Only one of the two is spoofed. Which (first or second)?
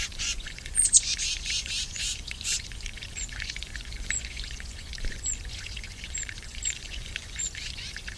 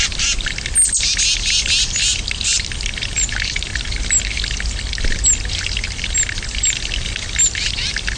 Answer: first